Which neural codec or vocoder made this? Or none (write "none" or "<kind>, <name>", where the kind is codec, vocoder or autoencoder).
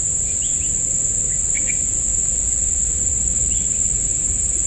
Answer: none